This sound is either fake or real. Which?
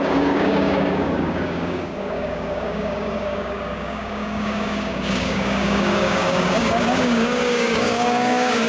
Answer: fake